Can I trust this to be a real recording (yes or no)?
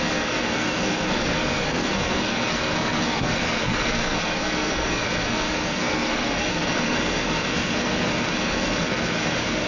no